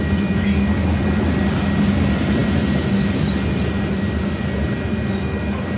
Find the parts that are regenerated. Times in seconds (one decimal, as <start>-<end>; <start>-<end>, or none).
none